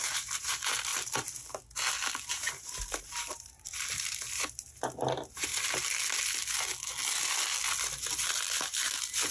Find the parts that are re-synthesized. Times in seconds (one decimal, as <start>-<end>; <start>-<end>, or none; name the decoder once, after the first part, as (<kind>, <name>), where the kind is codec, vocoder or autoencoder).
0.0-0.9 (vocoder, BigVGAN v2); 2.3-5.5; 8.0-9.3